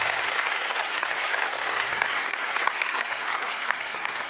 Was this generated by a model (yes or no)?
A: yes